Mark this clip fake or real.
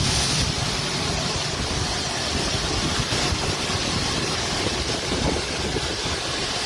real